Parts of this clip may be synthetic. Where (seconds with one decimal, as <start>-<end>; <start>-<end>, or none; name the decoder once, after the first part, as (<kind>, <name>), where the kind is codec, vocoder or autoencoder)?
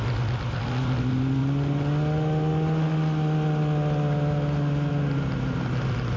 none